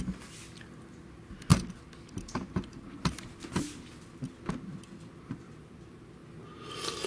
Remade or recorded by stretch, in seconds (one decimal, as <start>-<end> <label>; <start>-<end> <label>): 0.0-7.1 recorded